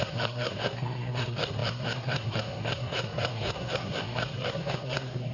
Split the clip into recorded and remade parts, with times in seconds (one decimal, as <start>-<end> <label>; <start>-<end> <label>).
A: 0.0-5.3 remade